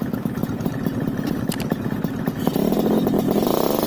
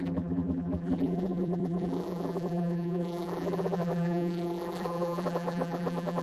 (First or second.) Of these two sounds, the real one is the first